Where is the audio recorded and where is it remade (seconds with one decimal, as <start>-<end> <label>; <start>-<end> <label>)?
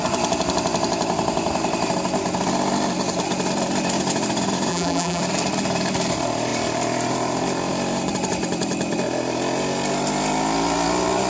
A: 0.0-4.7 recorded; 4.7-5.2 remade; 5.2-11.3 recorded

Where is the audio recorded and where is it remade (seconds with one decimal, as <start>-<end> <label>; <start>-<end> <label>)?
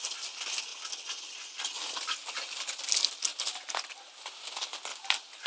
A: 0.0-2.2 recorded; 2.2-2.8 remade; 2.8-4.9 recorded; 4.9-5.5 remade